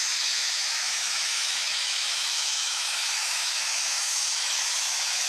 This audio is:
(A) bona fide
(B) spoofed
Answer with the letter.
B